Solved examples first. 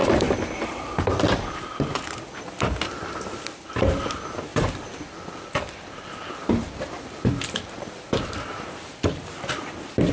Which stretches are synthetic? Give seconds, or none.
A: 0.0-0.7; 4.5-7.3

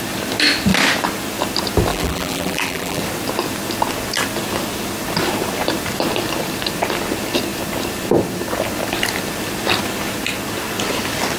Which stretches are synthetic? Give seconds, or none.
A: 1.9-3.0

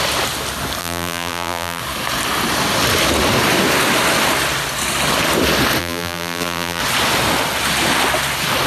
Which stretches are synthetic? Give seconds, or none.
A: 0.8-1.8; 5.8-6.8